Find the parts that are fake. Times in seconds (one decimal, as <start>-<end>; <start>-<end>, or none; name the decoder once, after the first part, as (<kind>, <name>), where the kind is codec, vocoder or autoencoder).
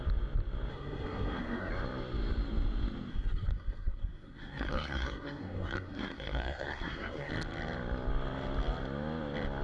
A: 0.7-1.7 (codec, SNAC); 3.1-7.3